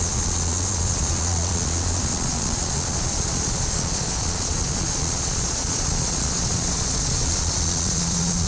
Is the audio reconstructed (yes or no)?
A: yes